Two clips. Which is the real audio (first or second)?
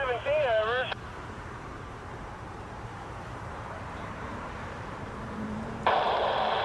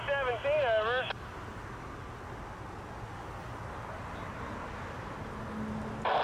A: second